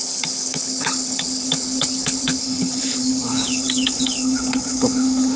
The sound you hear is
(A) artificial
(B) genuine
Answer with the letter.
A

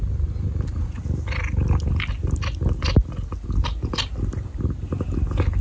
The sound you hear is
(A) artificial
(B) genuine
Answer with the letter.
B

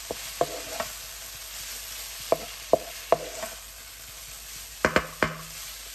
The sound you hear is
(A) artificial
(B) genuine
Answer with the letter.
B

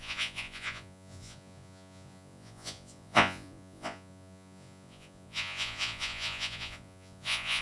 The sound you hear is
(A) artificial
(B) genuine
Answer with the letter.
A